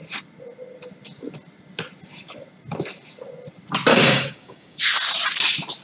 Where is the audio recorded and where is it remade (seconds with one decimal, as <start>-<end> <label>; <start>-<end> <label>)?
0.0-3.9 recorded; 3.9-4.8 remade; 4.8-5.8 recorded